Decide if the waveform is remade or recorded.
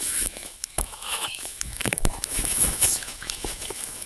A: remade